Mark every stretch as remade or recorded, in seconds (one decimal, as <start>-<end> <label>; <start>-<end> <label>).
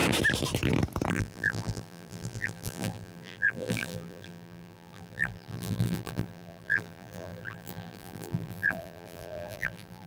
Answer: 0.0-1.1 recorded; 1.1-10.1 remade